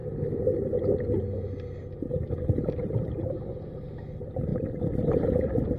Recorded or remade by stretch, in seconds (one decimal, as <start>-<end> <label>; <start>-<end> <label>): 0.0-2.8 recorded; 2.8-4.5 remade; 4.5-5.3 recorded; 5.3-5.8 remade